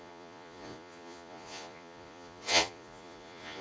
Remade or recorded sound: remade